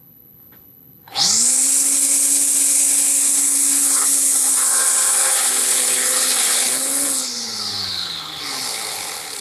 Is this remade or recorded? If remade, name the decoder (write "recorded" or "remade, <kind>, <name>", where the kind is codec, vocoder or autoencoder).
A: remade, codec, HILCodec